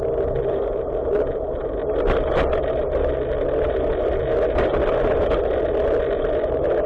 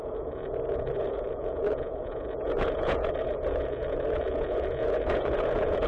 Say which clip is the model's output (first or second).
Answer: second